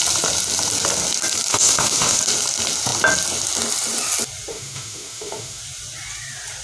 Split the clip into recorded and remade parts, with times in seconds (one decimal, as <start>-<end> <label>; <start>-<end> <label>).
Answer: 0.0-1.5 recorded; 1.5-2.2 remade; 2.2-4.5 recorded; 4.5-5.6 remade; 5.6-6.6 recorded